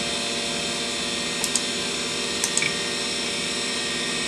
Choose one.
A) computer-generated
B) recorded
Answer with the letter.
B